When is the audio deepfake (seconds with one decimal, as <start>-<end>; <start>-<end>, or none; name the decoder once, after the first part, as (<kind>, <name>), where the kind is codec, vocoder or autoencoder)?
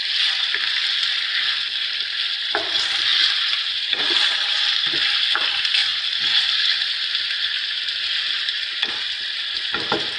0.0-3.1 (vocoder, BigVGAN v2); 3.6-5.9